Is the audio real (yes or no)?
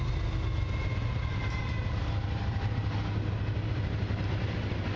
yes